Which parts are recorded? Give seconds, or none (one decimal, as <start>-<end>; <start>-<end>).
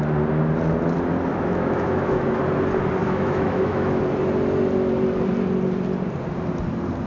0.0-1.3; 2.4-3.0; 4.0-7.1